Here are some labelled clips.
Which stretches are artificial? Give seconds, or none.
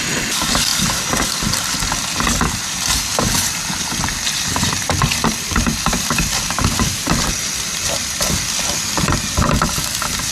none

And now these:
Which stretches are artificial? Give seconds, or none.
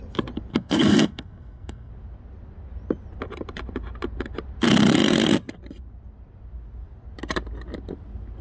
0.5-1.9 (codec, SNAC)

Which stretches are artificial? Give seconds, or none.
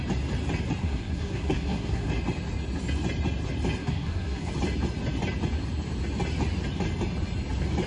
0.8-2.1 (codec, SNAC); 3.8-4.5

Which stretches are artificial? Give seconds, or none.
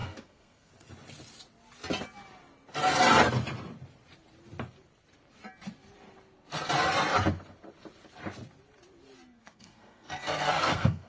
0.0-0.7 (codec, SNAC); 9.4-11.1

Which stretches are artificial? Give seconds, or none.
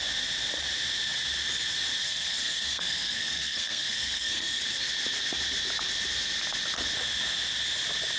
2.0-4.6 (codec, SNAC)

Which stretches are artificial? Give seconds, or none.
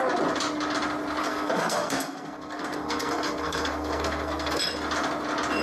1.2-4.6 (codec, SNAC)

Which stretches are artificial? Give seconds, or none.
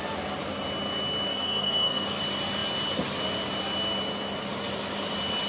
1.3-2.2 (codec, SNAC)